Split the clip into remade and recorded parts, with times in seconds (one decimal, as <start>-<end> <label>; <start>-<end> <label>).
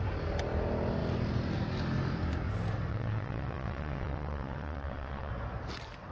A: 0.0-2.9 recorded; 2.9-5.3 remade; 5.3-6.1 recorded